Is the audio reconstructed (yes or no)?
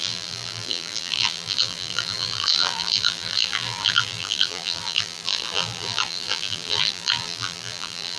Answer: yes